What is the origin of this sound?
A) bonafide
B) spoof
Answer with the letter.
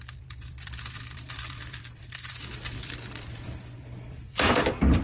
B